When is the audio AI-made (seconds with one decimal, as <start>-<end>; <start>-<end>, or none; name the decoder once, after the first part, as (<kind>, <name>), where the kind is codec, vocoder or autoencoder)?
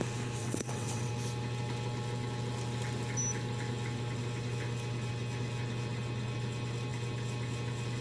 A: 0.4-1.1 (vocoder, WaveNeXt)